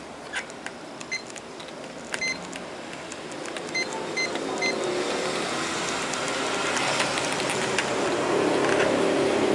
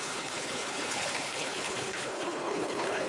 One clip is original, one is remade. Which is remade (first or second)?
second